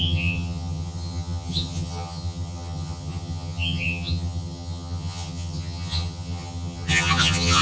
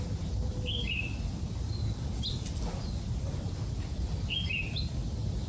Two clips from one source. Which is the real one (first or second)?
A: second